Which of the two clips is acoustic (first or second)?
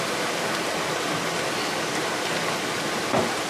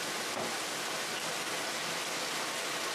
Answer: second